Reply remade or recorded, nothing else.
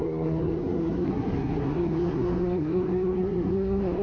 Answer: remade